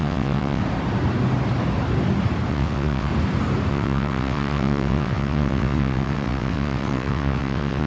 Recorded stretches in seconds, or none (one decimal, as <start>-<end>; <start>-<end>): 0.6-2.5; 3.1-3.7